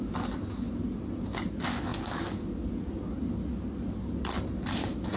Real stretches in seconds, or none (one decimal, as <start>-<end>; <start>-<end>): 0.0-1.9; 2.8-5.2